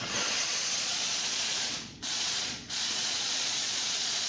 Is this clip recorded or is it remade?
remade